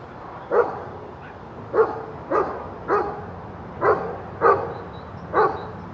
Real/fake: real